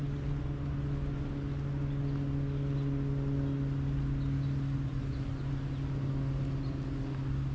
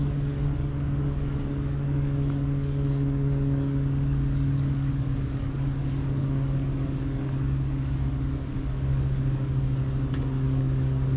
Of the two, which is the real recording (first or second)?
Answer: first